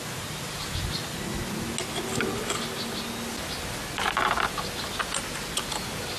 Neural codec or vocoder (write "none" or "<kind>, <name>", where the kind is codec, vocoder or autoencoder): none